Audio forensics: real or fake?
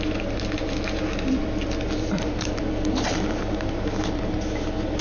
real